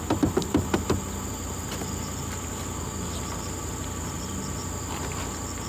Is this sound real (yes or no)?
yes